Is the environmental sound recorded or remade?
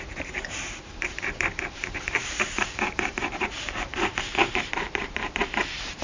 remade